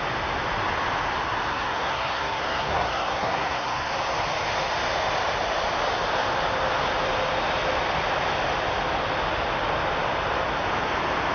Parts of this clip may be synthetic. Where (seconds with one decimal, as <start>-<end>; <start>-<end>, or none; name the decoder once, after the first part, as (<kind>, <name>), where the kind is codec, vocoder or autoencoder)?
1.5-3.9 (codec, SNAC)